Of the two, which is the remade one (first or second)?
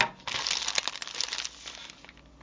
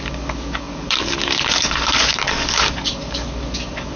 second